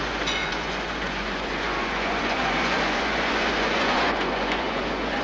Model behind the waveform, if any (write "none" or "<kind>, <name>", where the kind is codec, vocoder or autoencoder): vocoder, Vocos